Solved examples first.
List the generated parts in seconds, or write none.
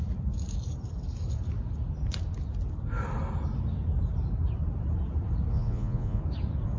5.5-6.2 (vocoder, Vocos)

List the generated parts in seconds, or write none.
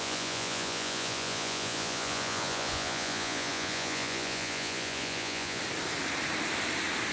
0.0-5.6 (vocoder, Vocos)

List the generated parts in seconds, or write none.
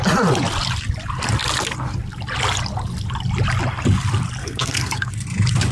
4.4-5.1 (codec, SNAC)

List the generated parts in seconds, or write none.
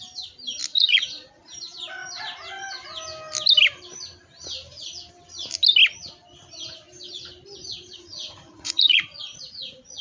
0.7-1.4 (vocoder, Vocos); 7.6-10.0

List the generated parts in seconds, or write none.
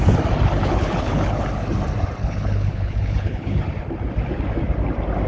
0.6-1.4 (codec, HILCodec); 2.2-3.6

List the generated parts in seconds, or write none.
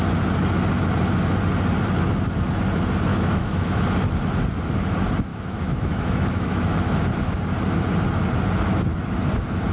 3.1-3.8 (autoencoder, DAC-VAE); 5.3-7.0